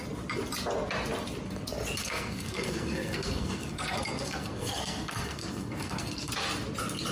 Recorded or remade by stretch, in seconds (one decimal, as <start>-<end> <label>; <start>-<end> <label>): 0.0-2.0 recorded; 2.0-6.3 remade; 6.3-7.1 recorded